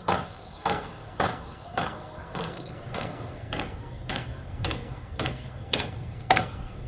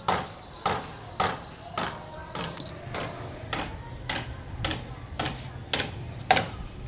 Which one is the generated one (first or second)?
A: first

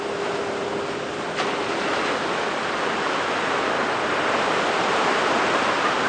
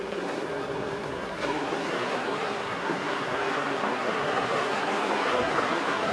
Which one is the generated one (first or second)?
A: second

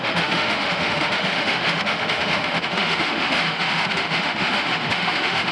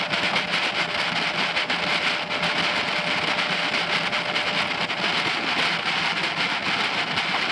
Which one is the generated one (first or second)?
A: first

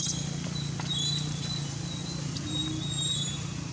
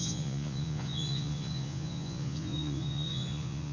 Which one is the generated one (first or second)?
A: second